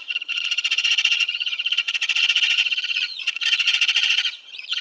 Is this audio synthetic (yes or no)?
yes